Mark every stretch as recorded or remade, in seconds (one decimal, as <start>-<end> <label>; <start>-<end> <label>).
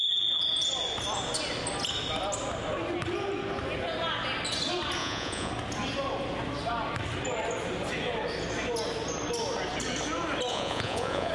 0.0-5.0 recorded; 5.0-5.5 remade; 5.5-10.5 recorded; 10.5-11.3 remade